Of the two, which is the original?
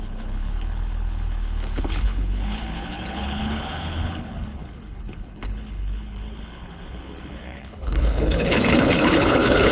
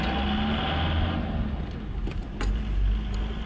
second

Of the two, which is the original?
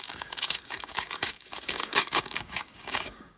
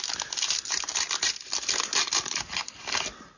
second